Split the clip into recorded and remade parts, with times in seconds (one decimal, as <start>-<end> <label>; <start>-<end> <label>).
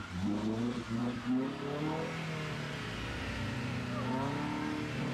0.0-5.1 recorded